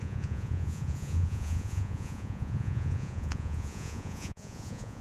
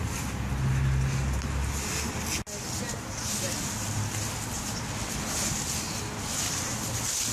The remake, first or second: first